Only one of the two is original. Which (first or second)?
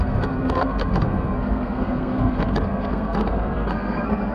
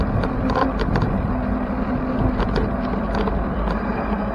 second